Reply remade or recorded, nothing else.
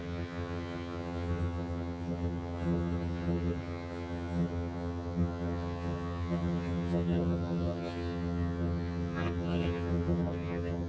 remade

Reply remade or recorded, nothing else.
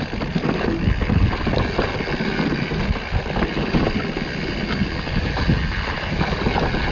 recorded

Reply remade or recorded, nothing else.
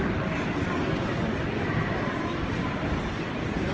recorded